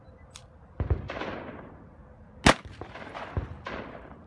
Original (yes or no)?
yes